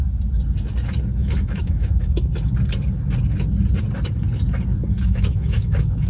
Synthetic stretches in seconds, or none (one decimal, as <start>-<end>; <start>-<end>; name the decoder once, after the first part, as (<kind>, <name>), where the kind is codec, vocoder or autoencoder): 1.2-2.3 (autoencoder, DAC-VAE); 4.7-6.1